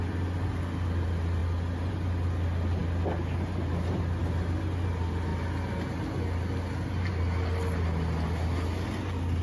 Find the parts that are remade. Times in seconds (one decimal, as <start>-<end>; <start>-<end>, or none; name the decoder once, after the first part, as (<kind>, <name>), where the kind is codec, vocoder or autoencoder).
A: none